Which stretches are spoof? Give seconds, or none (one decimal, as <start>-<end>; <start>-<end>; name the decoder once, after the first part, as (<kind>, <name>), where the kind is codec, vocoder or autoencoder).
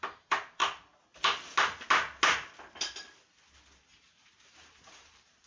0.0-0.6 (vocoder, BigVGAN v2); 3.9-5.5